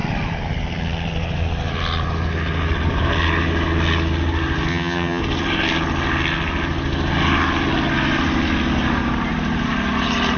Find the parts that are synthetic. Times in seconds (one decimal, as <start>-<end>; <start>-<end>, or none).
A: 4.7-5.2